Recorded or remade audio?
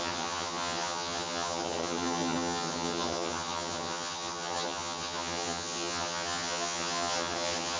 remade